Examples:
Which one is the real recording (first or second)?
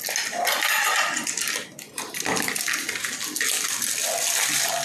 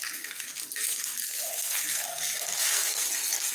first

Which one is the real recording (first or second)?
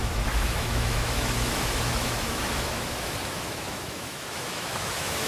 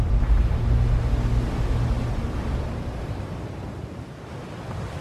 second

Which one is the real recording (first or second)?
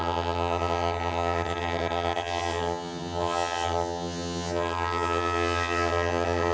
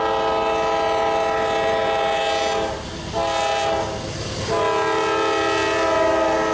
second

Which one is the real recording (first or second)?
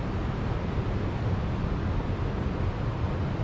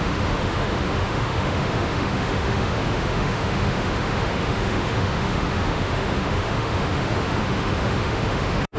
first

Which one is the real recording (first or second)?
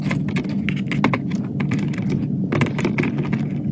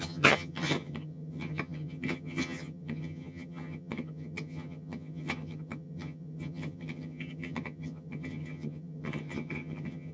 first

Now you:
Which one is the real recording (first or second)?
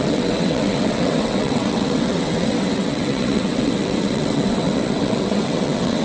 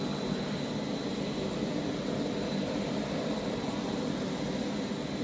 second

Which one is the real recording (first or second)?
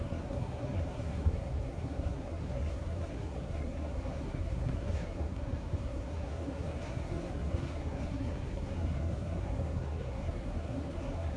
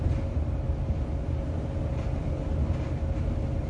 second